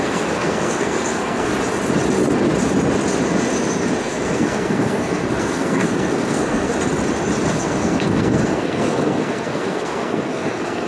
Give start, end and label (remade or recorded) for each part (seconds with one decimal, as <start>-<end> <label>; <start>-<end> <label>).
0.0-1.5 remade; 1.5-4.0 recorded; 4.0-6.7 remade; 6.7-7.5 recorded; 7.5-10.9 remade